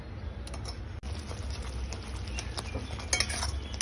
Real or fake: real